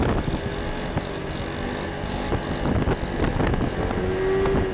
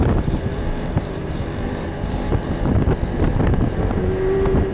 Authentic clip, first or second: first